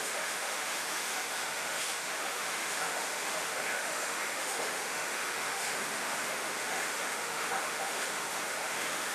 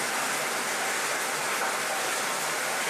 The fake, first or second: first